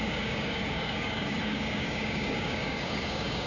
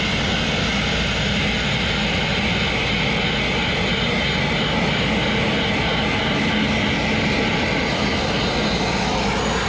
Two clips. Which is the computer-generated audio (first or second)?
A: first